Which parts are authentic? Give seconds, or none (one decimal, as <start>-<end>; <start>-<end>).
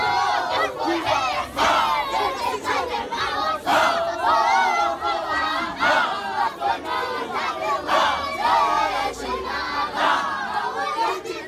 0.0-11.5